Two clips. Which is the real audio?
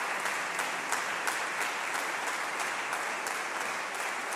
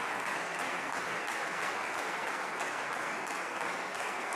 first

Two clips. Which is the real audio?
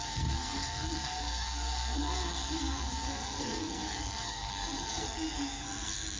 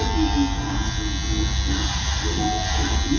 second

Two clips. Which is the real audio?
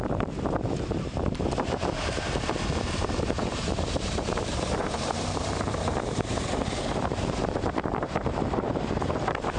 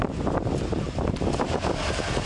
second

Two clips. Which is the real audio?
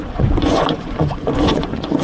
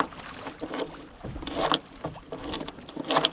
second